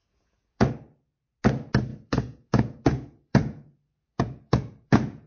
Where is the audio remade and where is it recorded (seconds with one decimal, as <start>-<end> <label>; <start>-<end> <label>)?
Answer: 0.0-0.7 remade; 0.7-1.9 recorded; 1.9-5.3 remade